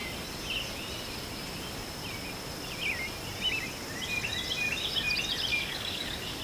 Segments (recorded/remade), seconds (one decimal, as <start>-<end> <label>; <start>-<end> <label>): 0.0-5.5 recorded; 5.5-6.4 remade